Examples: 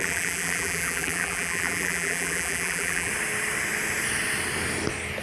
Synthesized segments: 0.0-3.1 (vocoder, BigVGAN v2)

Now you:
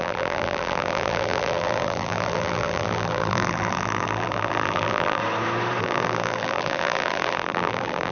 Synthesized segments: 0.0-5.2 (vocoder, BigVGAN v2); 5.8-8.1

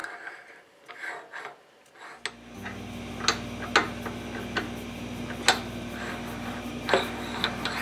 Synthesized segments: 0.0-0.9 (vocoder, BigVGAN v2)

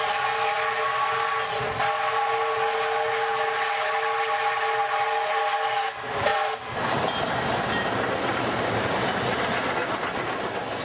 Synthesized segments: none

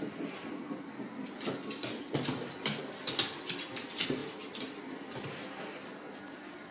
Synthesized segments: 4.2-5.6 (vocoder, BigVGAN v2)